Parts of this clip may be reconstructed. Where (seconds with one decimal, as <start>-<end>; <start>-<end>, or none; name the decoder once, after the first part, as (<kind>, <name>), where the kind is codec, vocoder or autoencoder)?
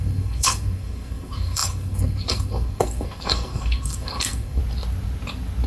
0.0-4.6 (codec, SNAC)